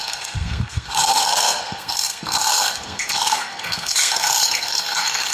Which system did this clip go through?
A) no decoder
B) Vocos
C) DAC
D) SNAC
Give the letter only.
D